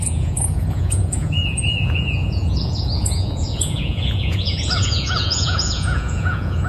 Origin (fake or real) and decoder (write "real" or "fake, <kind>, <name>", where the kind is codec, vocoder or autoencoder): fake, vocoder, Vocos